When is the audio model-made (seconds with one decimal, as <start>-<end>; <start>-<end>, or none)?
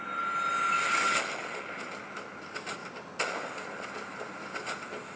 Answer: none